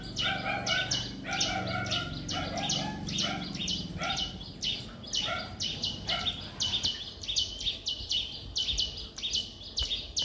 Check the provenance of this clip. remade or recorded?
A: recorded